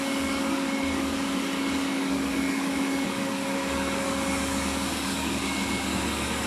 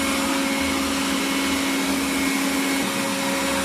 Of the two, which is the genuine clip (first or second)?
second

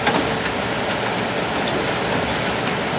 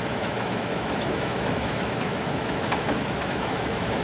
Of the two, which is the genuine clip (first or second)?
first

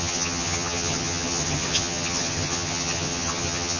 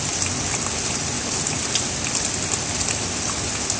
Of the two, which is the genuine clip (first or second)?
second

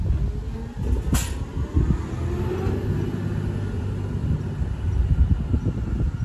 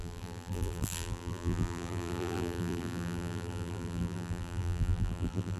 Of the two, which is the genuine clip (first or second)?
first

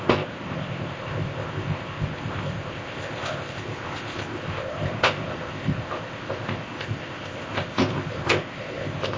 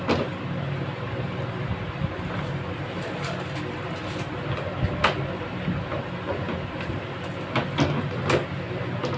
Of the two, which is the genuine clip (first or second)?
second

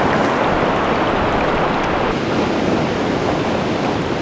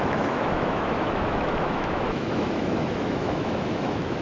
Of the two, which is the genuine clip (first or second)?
first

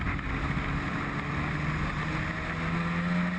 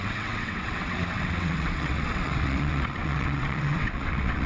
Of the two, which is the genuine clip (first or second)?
first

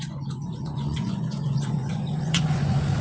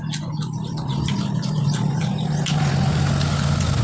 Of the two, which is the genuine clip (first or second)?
second